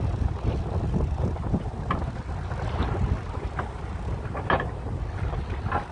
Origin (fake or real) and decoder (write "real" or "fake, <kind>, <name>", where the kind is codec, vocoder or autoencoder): real